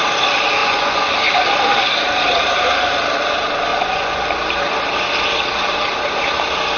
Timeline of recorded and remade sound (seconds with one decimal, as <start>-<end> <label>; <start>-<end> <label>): 0.0-0.6 recorded; 0.6-1.1 remade; 1.1-3.7 recorded; 3.7-4.2 remade; 4.2-6.8 recorded